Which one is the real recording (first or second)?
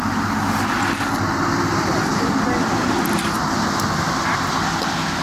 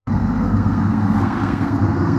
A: first